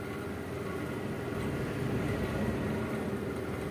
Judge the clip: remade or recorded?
recorded